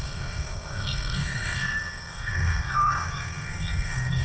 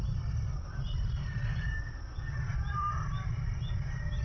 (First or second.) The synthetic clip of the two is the first